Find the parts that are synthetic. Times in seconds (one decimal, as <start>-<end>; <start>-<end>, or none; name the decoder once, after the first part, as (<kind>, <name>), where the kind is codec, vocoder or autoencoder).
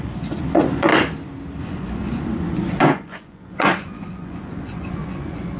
0.0-0.9 (vocoder, Vocos); 1.6-5.6